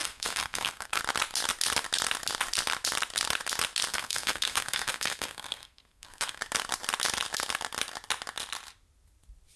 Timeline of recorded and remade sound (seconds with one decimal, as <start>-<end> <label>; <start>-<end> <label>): 0.0-1.0 remade; 1.0-3.9 recorded; 3.9-6.4 remade; 6.4-9.6 recorded